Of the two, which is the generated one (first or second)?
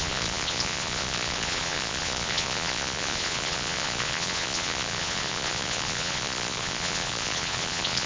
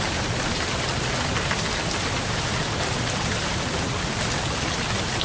first